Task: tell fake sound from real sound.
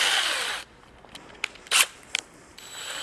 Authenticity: real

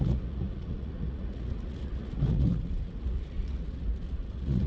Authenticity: fake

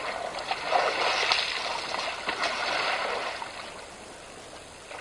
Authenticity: real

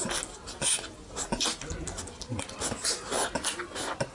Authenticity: real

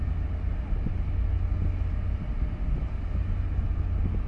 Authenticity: real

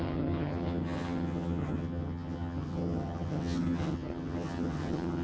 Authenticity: fake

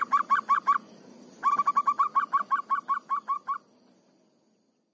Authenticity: real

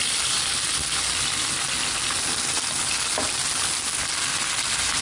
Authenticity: real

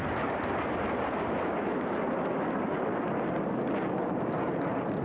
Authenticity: real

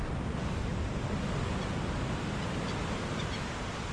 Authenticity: real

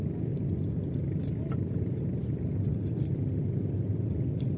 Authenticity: real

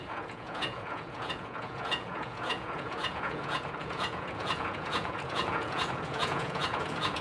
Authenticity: fake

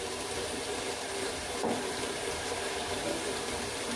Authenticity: fake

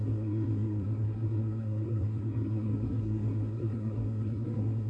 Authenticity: fake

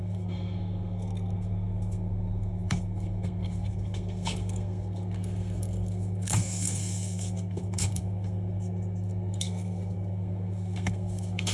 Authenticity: fake